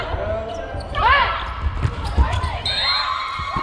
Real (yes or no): yes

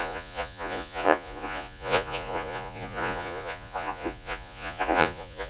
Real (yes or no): no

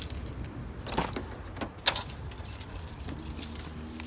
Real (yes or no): yes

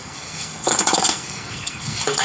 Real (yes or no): no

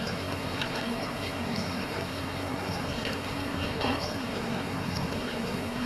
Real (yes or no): no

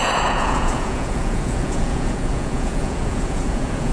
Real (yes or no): no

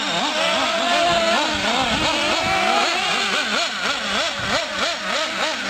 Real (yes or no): yes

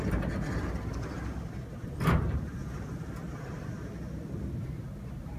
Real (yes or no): yes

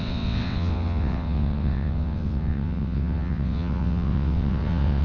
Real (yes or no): no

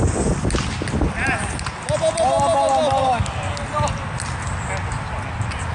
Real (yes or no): yes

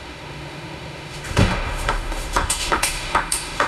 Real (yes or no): no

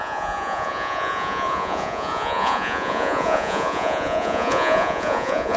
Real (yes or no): no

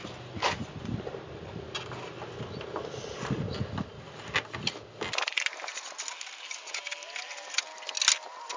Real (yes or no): yes